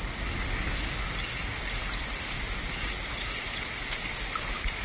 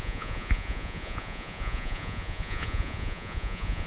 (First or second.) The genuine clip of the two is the first